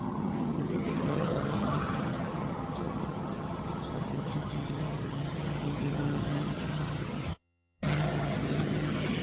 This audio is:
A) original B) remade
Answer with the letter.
B